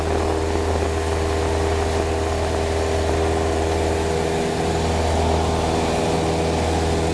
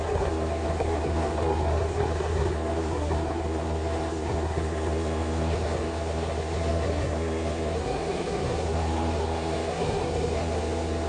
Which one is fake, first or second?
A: second